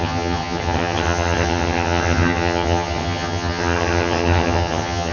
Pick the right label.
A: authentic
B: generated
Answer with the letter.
B